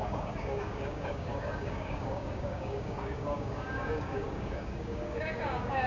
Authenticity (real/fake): fake